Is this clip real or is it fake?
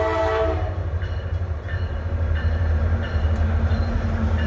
fake